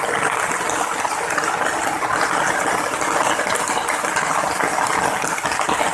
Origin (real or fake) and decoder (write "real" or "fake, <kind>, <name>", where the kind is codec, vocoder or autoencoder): real